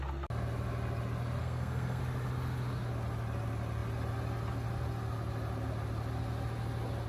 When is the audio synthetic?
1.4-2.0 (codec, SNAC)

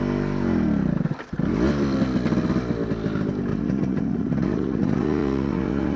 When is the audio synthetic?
3.5-6.0 (vocoder, Vocos)